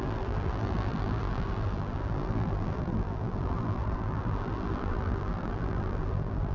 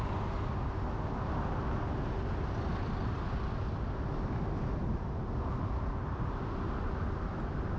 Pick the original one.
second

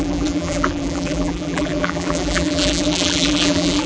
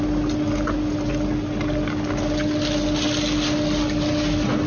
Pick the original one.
second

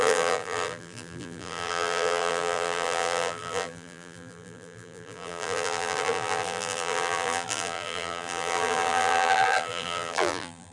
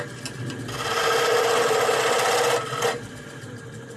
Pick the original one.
second